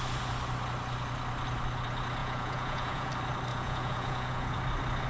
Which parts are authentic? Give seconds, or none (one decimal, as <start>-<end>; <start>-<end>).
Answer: 0.0-2.2; 3.1-3.5; 4.6-5.1